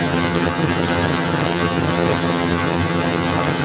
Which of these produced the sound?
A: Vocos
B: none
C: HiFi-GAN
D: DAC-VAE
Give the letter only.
C